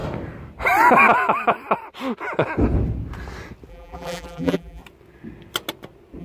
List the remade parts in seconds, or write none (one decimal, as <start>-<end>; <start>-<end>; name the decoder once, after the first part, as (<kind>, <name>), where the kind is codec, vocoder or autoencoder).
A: 3.7-4.8 (vocoder, BigVGAN v2)